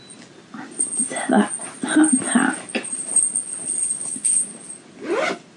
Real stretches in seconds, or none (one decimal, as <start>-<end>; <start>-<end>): 0.0-5.6